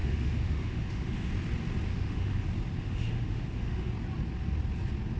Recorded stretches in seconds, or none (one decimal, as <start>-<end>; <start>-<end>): 1.3-1.9; 2.4-2.8; 3.9-5.2